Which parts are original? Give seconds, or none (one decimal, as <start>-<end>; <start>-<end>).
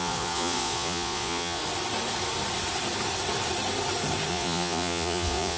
1.6-4.3